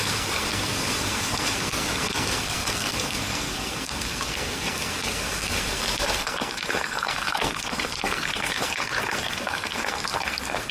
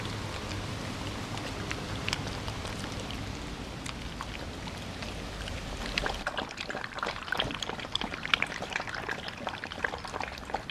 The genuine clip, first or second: second